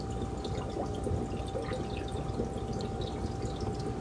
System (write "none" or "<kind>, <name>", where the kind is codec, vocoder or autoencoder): none